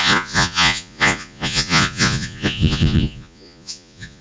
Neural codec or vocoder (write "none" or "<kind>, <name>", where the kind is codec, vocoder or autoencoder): vocoder, Vocos